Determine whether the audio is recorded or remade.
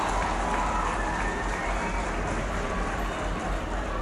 recorded